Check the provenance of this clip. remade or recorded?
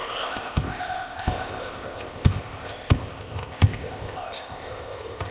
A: remade